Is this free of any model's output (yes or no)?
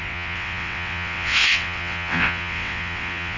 no